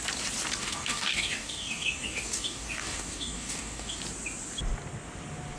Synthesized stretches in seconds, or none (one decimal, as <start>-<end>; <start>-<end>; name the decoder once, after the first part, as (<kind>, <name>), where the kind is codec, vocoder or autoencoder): 0.6-4.0 (codec, DAC)